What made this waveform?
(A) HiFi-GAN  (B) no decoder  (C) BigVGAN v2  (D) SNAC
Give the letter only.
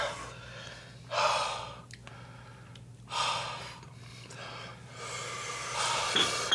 B